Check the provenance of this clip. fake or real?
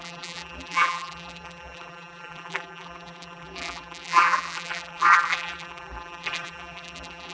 fake